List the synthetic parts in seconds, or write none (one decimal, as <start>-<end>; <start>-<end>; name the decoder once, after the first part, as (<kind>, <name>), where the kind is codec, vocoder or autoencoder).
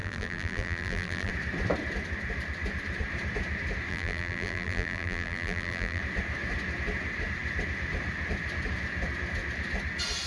0.0-1.3 (vocoder, BigVGAN v2); 3.9-6.0